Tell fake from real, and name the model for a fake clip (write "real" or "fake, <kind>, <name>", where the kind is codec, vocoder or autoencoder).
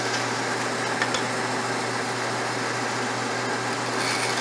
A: real